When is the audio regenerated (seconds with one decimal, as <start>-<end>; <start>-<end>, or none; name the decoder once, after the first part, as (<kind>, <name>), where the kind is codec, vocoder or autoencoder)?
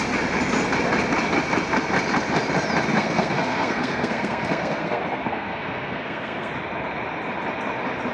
3.0-6.5 (codec, SNAC)